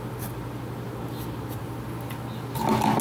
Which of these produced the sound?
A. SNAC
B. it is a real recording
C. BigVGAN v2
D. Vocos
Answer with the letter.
B